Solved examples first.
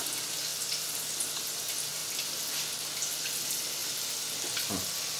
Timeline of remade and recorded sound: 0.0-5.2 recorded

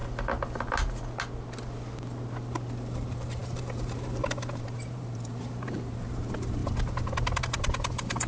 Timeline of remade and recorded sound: 0.0-2.7 recorded; 2.7-6.6 remade; 6.6-7.4 recorded; 7.4-8.3 remade